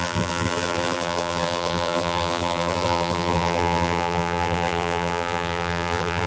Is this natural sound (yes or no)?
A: no